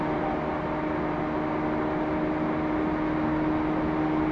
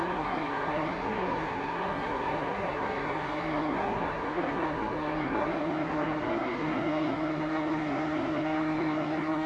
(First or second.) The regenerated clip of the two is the second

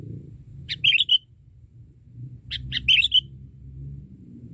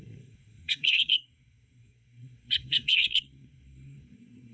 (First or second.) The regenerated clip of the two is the second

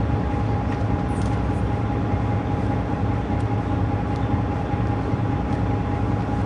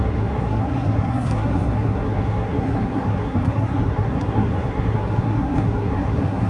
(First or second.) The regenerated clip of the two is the second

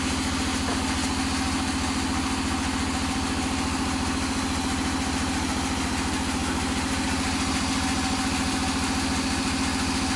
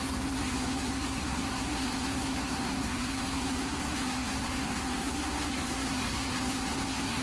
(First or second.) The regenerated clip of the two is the second